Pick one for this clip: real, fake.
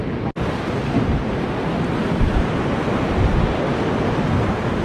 real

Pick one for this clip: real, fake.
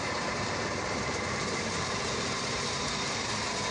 fake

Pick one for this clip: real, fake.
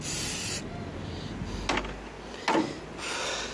real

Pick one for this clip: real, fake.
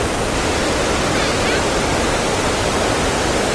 real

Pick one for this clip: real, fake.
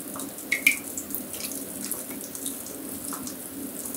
real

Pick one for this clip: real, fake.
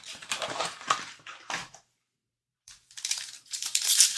fake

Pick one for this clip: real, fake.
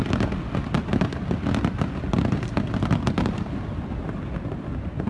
real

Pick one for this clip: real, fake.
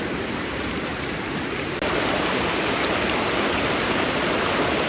real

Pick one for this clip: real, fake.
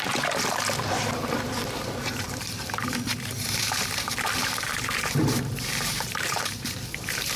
fake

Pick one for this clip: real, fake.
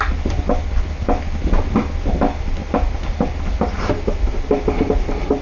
real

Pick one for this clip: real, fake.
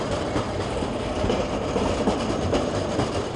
fake